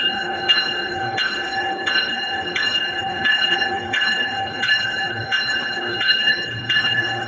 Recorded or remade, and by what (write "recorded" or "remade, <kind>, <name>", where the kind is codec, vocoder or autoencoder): remade, codec, HILCodec